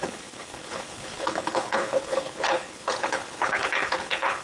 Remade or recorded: remade